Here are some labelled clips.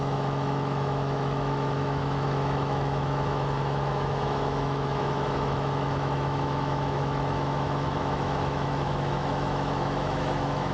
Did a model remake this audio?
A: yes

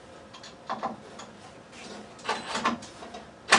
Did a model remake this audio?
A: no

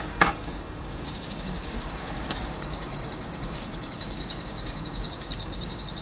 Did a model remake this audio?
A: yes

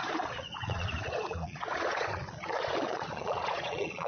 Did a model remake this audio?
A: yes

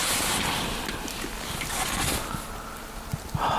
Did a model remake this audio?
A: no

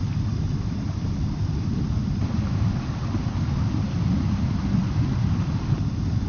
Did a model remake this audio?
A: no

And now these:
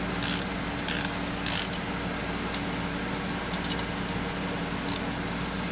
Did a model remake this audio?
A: no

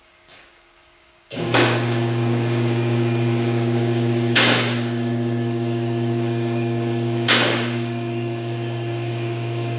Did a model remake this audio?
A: yes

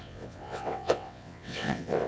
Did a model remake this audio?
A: yes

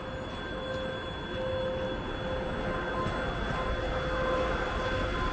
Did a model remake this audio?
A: no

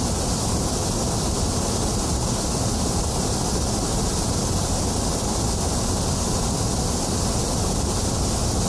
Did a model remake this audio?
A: no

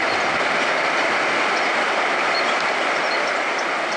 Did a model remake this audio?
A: yes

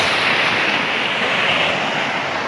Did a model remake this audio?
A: no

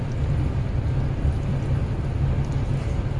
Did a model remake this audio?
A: no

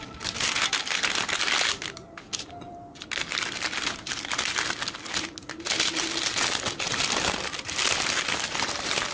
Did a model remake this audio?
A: no